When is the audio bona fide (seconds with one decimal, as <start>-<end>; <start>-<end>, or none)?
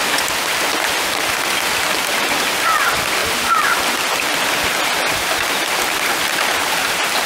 0.0-7.3